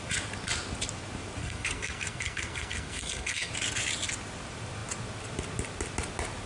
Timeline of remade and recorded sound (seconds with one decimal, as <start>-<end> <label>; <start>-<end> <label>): 0.0-1.4 recorded; 1.4-3.5 remade; 3.5-6.5 recorded